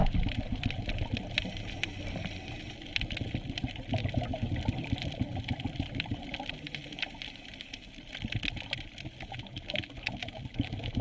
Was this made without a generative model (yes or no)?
yes